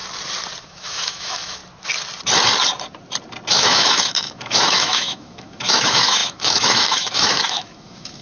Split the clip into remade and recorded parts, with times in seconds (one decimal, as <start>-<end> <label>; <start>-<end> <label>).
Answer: 0.0-0.6 recorded; 0.6-1.6 remade; 1.6-3.5 recorded; 3.5-8.2 remade